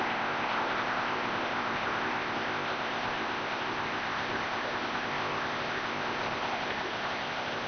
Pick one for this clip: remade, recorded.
remade